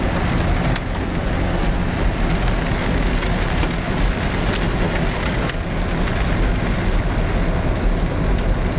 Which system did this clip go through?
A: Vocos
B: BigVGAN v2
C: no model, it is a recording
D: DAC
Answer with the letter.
C